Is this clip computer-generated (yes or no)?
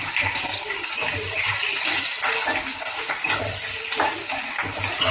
no